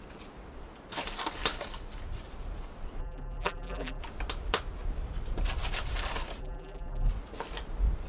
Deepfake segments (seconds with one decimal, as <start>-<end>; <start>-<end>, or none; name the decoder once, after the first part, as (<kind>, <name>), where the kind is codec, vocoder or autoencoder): 3.0-4.0 (vocoder, BigVGAN v2); 6.4-7.1